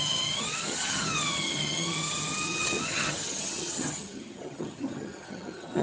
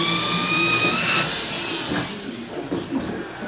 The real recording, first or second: second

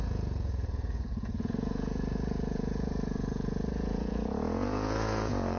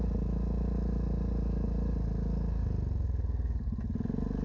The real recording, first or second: second